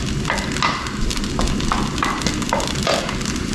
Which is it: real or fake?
real